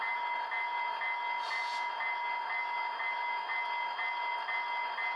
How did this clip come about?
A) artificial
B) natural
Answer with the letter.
B